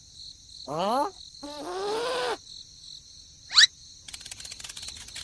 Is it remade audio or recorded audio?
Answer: recorded